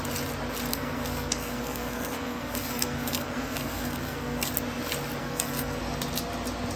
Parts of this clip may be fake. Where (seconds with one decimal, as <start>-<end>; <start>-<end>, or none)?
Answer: 0.7-4.5; 5.2-5.8